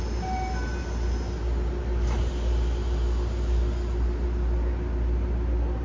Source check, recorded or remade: recorded